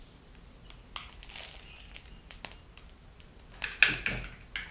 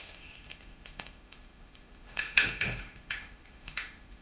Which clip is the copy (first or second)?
second